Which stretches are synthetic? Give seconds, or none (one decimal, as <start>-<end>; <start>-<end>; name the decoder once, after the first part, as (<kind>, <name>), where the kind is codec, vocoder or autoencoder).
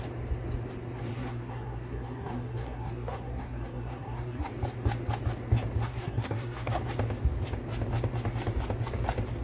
1.1-4.5 (codec, SNAC); 5.8-6.8